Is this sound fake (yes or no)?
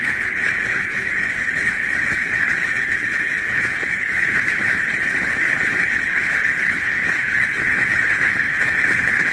yes